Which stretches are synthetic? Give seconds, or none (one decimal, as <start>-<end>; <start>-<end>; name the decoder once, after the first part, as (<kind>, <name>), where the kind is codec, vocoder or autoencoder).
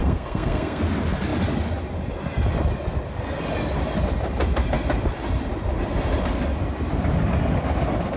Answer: 0.0-0.8 (codec, SNAC)